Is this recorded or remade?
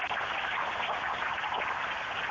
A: recorded